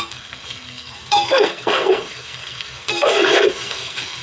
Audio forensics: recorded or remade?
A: remade